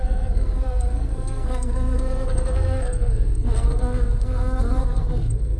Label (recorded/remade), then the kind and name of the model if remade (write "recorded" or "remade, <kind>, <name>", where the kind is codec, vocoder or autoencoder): remade, codec, SNAC